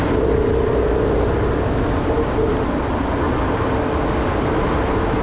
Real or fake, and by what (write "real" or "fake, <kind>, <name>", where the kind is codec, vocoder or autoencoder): real